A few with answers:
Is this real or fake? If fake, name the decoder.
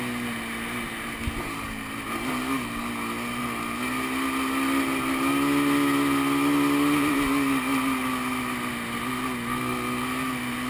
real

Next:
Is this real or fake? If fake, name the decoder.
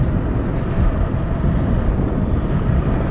real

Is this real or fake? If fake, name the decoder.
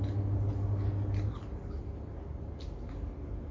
real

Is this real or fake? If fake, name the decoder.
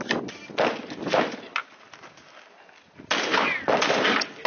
real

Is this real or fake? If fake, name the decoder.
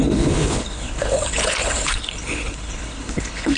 fake, codec, HILCodec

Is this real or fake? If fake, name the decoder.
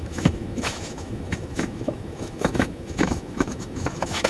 fake, autoencoder, DAC-VAE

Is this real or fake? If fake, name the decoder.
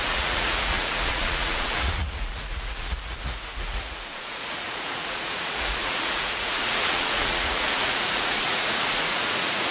fake, vocoder, Vocos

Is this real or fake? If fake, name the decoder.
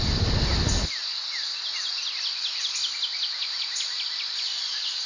real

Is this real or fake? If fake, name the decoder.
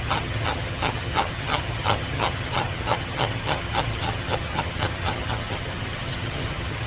fake, vocoder, HiFi-GAN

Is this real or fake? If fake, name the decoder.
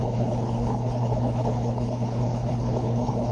fake, codec, HILCodec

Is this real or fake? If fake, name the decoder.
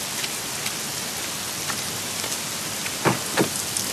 real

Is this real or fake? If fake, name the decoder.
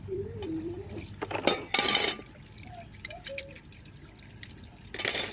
fake, vocoder, BigVGAN v2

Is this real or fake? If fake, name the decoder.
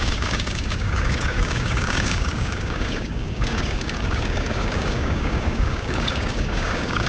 fake, codec, DAC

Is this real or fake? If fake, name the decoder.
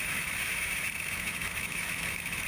fake, autoencoder, DAC-VAE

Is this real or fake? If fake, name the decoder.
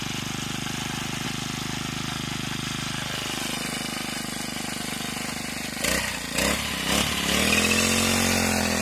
real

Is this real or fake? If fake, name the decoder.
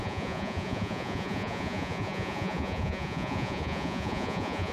fake, vocoder, Vocos